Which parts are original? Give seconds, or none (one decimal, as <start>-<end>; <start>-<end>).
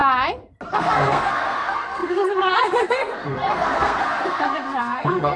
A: 0.0-0.7